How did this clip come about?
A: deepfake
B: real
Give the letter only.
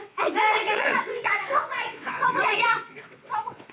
A